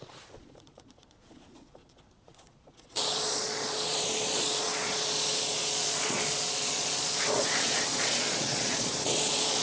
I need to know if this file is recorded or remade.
remade